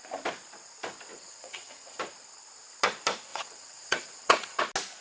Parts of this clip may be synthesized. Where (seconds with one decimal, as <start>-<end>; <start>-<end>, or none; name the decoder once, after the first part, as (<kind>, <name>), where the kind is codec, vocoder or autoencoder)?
1.1-2.0 (vocoder, WaveNeXt); 3.3-4.6